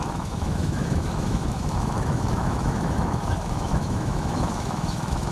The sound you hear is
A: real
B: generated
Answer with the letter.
B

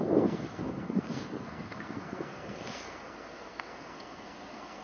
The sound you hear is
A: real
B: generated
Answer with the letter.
B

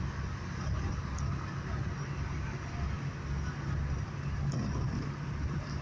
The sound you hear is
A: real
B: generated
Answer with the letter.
A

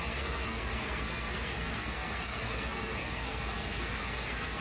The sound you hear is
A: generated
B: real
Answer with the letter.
A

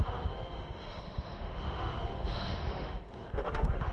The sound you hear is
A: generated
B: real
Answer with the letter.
A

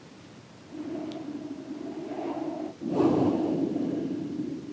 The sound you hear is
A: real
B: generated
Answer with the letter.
A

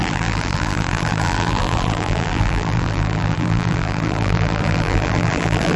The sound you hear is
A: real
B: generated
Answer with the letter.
B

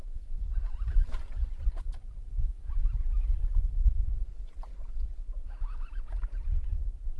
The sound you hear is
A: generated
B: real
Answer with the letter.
A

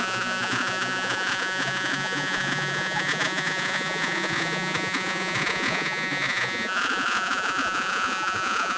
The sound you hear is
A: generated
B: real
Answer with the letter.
A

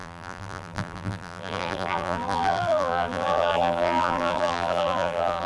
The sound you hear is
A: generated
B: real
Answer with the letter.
A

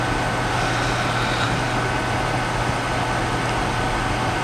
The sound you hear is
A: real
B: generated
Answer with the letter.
A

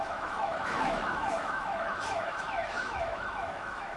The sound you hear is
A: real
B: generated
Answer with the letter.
B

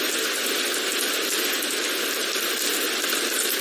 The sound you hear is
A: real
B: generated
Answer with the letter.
A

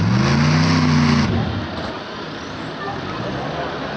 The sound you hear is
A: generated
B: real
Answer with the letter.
B